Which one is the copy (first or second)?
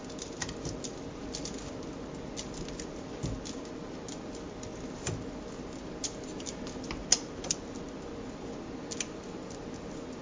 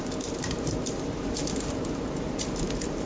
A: second